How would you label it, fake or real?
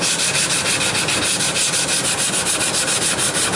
real